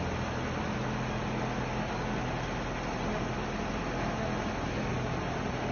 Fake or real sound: real